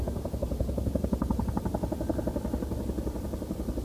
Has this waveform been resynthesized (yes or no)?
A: yes